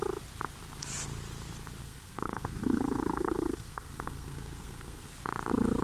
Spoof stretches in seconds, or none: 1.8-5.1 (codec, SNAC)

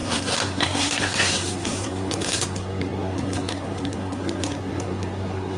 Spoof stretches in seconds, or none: 0.0-5.6 (codec, SNAC)

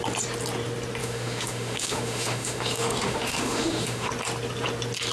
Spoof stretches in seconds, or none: 1.0-4.1 (autoencoder, DAC-VAE)